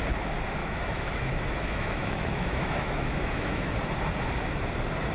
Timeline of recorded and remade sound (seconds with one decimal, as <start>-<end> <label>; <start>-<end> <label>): 0.0-0.6 recorded; 0.6-3.7 remade; 3.7-5.1 recorded